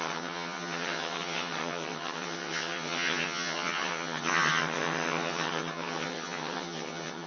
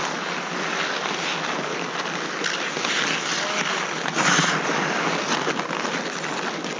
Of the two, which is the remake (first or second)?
first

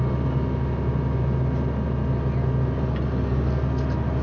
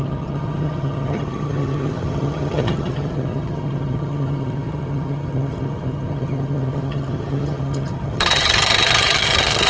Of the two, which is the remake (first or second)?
second